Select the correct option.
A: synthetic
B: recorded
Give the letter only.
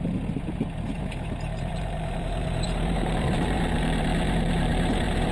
A